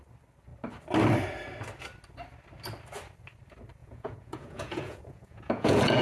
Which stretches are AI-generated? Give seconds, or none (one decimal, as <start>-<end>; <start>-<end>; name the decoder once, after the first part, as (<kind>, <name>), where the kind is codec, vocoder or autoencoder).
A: 3.8-6.0 (vocoder, Vocos)